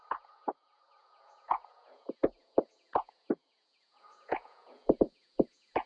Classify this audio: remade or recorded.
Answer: remade